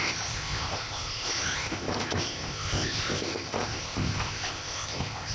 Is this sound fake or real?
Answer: fake